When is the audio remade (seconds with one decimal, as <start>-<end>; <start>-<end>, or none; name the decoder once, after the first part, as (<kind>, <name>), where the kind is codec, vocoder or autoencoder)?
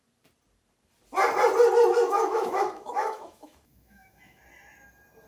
1.9-4.4 (autoencoder, DAC-VAE)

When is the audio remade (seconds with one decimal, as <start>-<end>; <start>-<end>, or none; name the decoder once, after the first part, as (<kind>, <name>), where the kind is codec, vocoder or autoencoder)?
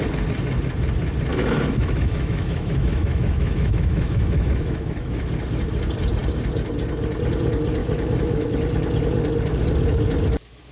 1.3-5.3 (autoencoder, DAC-VAE); 7.8-8.5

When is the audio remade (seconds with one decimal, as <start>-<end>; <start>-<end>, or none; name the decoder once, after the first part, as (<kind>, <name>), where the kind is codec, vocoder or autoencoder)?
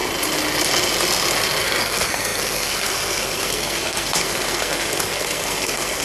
1.6-6.0 (codec, SNAC)